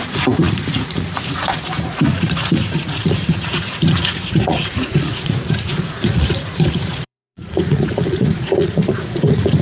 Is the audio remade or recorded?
remade